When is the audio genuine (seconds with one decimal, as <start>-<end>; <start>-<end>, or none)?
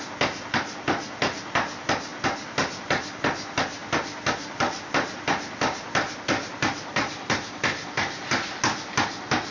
0.0-2.1; 2.8-3.8; 8.6-9.5